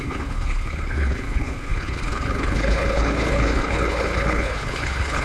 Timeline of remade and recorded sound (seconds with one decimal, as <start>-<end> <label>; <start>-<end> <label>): 0.0-5.2 remade